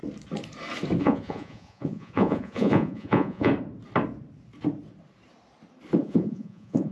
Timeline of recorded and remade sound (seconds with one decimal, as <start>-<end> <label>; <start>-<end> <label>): 0.0-1.0 recorded; 1.0-3.5 remade; 3.5-6.0 recorded; 6.0-6.9 remade